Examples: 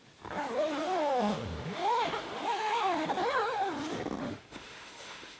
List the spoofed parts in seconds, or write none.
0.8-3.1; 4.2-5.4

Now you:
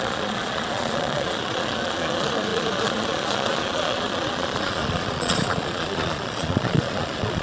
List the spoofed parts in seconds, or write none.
0.0-7.4

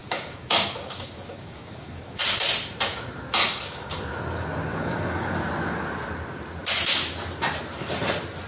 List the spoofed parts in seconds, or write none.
0.0-2.2; 3.4-4.0; 4.7-5.3

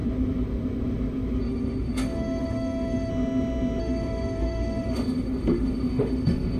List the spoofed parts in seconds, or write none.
1.4-3.1; 3.8-6.6

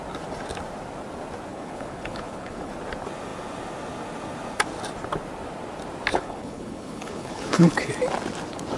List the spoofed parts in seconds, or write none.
1.5-2.7; 6.1-7.9

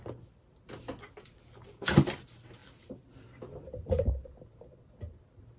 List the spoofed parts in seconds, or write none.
2.6-4.9

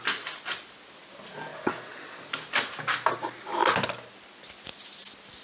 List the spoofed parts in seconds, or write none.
none

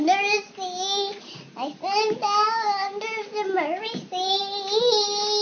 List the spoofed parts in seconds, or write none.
none